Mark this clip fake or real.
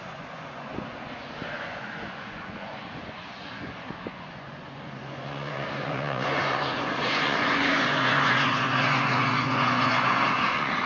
fake